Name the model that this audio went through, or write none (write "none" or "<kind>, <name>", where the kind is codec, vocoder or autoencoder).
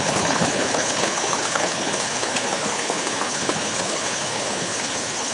codec, HILCodec